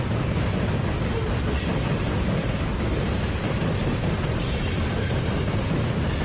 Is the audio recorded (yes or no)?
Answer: yes